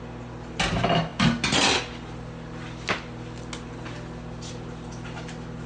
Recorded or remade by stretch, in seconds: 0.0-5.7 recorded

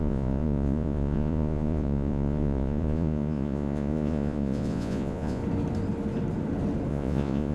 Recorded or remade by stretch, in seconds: 0.0-5.4 remade; 5.4-6.9 recorded; 6.9-7.5 remade

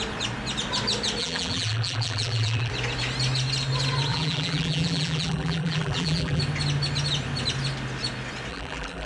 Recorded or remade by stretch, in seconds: 0.0-1.2 recorded; 1.2-2.7 remade; 2.7-4.1 recorded; 4.1-6.4 remade; 6.4-8.5 recorded; 8.5-9.1 remade

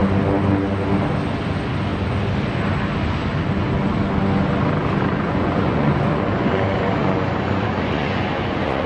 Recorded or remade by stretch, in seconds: 0.0-5.1 recorded; 5.1-8.9 remade

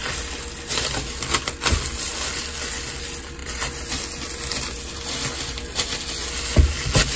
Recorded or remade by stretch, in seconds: 0.0-7.2 recorded